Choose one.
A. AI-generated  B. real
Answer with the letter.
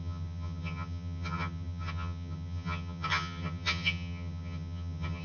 A